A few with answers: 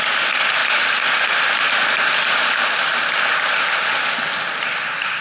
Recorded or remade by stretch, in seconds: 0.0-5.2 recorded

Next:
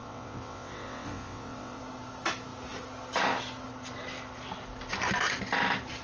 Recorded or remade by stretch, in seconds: 0.0-1.8 remade; 1.8-6.0 recorded

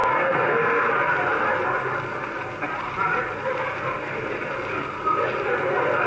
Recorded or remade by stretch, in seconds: 0.0-0.9 remade; 0.9-6.1 recorded